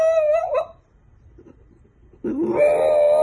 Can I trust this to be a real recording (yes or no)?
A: yes